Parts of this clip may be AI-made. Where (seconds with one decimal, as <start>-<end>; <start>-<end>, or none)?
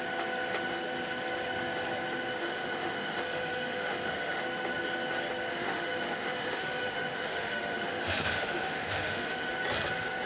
2.4-4.4; 5.5-9.5